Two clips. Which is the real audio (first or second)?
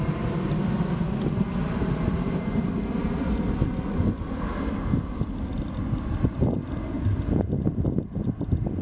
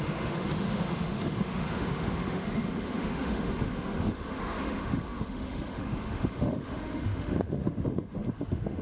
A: first